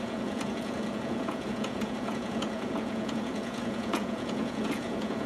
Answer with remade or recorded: remade